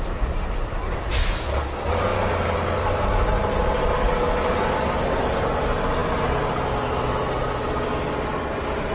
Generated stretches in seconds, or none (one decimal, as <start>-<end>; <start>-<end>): none